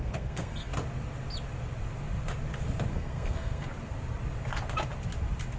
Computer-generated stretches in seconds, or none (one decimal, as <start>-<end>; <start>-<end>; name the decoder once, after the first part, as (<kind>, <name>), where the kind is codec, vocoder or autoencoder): 0.0-0.7 (codec, SNAC); 2.9-3.7